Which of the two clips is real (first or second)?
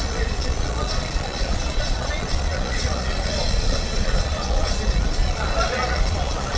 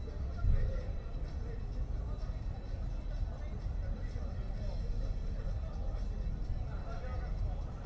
second